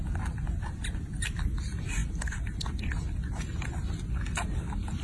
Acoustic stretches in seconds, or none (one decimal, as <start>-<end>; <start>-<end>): 0.0-5.0